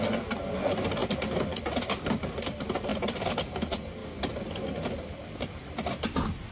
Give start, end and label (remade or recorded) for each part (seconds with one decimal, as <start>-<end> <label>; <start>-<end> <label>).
0.0-6.5 recorded